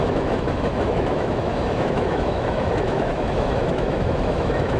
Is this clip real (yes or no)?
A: no